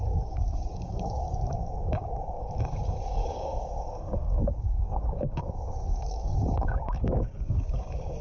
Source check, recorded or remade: remade